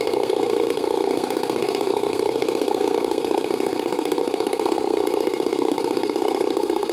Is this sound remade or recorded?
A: remade